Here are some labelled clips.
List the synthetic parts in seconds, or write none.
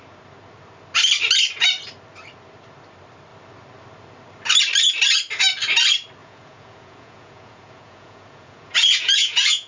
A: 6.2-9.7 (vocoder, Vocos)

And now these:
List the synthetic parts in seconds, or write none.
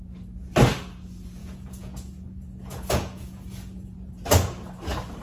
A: 1.4-4.1 (vocoder, Vocos)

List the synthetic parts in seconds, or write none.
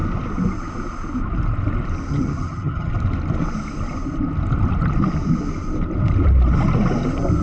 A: 2.1-2.9 (vocoder, HiFi-GAN)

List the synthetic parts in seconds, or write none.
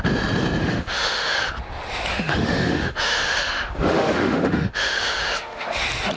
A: 0.6-1.4 (autoencoder, DAC-VAE); 2.1-5.8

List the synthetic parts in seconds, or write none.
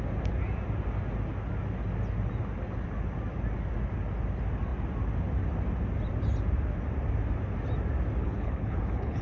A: 8.2-9.2 (codec, HILCodec)